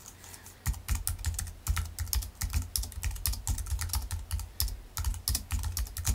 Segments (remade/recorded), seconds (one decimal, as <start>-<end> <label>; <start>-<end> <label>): 0.0-6.1 recorded